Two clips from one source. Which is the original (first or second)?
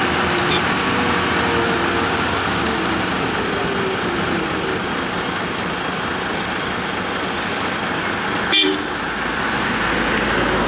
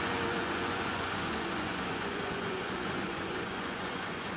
first